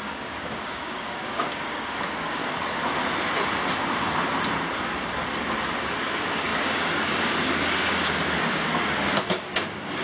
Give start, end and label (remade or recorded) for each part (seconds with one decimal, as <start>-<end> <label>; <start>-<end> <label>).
0.0-2.4 remade; 2.4-5.8 recorded; 5.8-10.0 remade